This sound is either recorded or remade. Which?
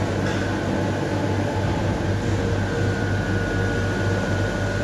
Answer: recorded